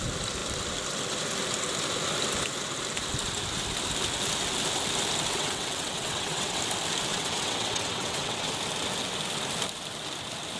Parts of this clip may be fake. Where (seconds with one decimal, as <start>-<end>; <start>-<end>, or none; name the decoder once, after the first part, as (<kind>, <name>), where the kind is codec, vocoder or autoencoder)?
5.3-6.6 (vocoder, WaveNeXt); 7.1-8.5